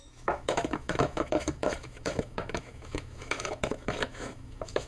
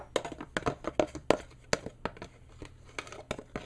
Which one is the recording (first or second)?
second